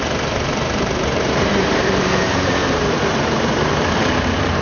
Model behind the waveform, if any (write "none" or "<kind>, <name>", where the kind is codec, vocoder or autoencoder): vocoder, BigVGAN v2